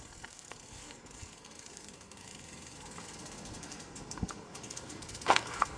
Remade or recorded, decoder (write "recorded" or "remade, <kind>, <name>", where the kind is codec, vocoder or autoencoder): remade, codec, SNAC